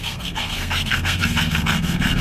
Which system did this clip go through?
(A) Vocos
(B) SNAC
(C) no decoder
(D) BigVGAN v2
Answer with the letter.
B